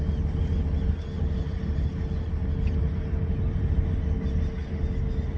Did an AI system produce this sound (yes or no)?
no